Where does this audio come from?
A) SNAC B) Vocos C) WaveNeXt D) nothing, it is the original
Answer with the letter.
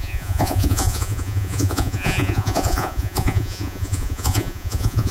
B